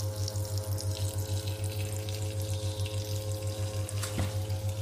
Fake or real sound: real